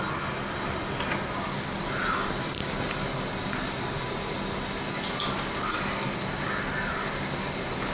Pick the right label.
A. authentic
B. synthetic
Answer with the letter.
A